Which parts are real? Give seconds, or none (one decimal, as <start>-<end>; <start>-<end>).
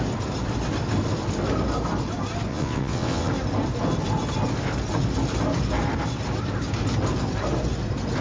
0.0-2.5; 3.3-8.2